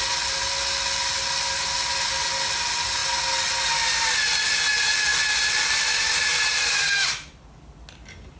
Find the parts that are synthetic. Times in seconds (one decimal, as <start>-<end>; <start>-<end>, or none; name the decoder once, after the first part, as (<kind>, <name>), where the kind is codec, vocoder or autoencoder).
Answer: none